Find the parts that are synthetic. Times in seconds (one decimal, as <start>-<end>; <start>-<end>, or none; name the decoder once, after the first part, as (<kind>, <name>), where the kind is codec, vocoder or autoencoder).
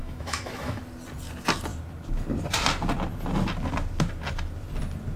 0.0-0.8 (autoencoder, DAC-VAE)